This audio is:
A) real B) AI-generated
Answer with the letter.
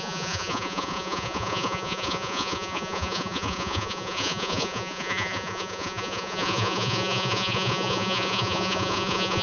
B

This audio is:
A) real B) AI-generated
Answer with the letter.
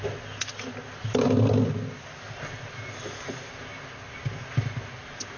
A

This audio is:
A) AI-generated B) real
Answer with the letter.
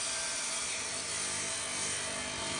B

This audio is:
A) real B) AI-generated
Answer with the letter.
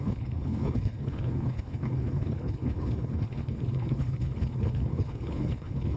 B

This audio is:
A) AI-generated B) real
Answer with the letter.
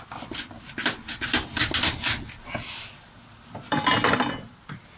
B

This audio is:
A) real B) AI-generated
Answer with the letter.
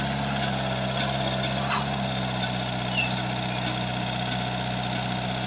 A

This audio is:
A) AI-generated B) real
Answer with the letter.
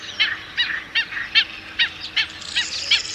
B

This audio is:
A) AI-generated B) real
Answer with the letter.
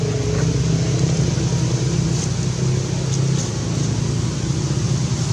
B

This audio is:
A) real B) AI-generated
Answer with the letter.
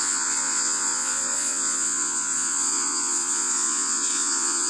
B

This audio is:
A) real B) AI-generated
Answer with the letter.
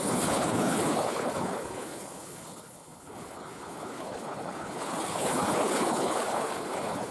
B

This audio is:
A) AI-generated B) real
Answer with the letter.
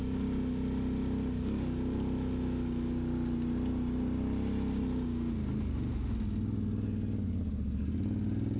B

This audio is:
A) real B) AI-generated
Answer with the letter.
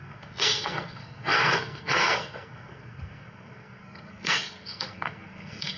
B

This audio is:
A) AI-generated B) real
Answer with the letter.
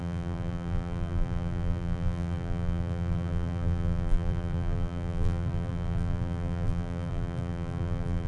A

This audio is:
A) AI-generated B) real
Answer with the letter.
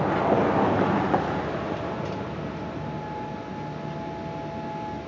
B